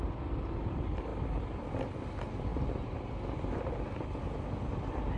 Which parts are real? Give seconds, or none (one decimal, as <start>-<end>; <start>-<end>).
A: 0.0-5.2